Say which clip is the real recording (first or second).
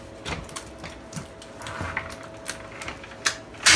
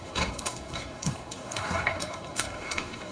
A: first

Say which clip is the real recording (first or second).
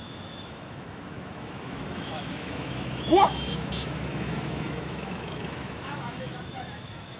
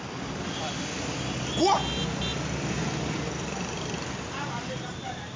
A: second